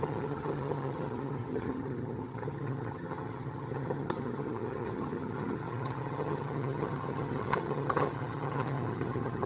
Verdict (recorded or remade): remade